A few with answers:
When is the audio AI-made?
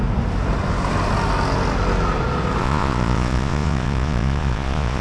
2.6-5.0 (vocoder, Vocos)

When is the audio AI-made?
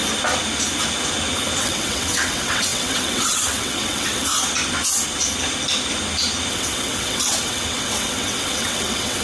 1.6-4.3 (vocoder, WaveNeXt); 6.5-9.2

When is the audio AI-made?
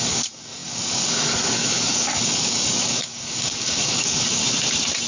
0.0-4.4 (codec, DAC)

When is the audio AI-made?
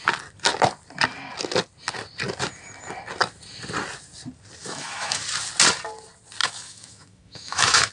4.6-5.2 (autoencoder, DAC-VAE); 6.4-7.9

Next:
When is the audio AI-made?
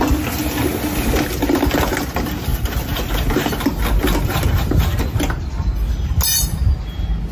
none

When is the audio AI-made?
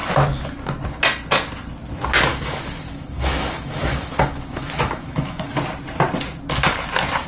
2.3-5.6 (autoencoder, DAC-VAE)